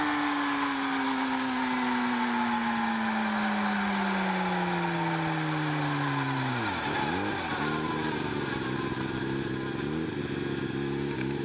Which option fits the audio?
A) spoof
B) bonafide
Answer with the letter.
B